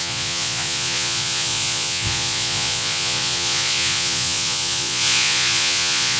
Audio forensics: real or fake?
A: fake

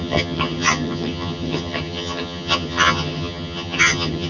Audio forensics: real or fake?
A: fake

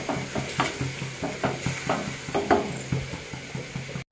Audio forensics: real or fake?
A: real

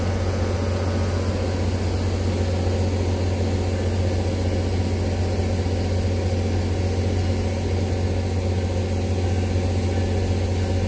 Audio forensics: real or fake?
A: real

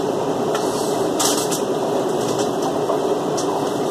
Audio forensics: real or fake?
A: real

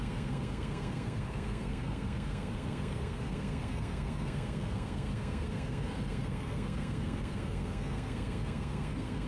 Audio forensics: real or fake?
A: fake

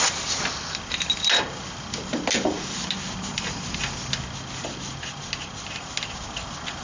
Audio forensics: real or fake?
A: real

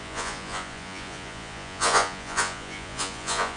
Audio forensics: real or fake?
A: fake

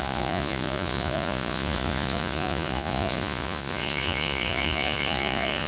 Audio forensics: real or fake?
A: fake